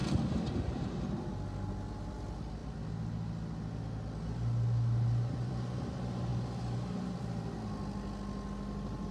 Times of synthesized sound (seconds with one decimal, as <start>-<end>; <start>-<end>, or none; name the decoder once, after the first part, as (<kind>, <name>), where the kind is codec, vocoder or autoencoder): none